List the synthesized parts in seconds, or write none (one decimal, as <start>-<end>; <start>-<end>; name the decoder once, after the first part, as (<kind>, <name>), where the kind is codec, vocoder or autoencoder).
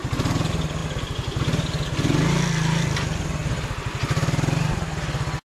none